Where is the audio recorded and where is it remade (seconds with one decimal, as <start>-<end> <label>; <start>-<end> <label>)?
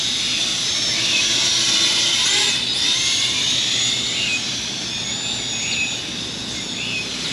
0.0-0.5 recorded; 0.5-4.9 remade; 4.9-7.3 recorded